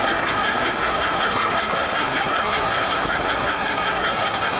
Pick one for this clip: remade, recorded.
remade